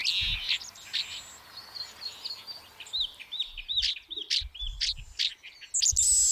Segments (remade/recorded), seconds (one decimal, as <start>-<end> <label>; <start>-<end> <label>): 0.0-6.3 recorded